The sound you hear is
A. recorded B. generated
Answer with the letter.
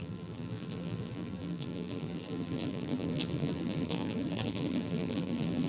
B